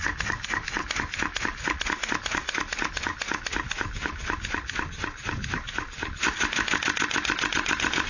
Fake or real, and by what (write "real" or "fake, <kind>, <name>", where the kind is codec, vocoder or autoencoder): real